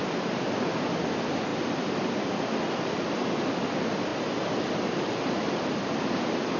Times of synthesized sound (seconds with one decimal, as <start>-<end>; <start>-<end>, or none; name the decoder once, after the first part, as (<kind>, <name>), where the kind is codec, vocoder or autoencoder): none